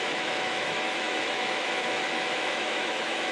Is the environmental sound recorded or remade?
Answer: remade